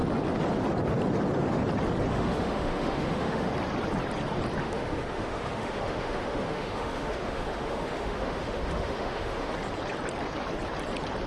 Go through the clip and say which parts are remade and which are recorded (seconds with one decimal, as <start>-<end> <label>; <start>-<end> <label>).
0.0-2.1 recorded; 2.1-3.5 remade; 3.5-4.6 recorded; 4.6-9.5 remade; 9.5-11.3 recorded